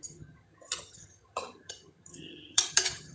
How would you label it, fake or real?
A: fake